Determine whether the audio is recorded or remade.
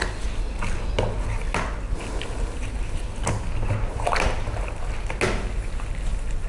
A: recorded